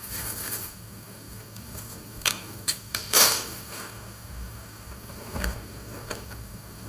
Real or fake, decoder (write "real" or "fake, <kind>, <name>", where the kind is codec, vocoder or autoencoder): fake, codec, DAC